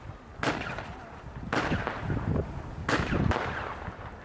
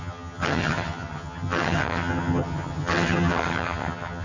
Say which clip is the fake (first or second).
second